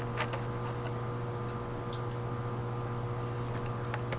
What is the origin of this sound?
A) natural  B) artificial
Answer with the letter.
A